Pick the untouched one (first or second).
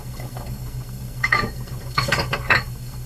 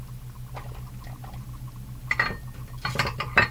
second